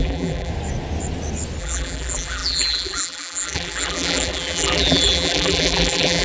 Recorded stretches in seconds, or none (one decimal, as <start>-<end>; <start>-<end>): 0.5-1.6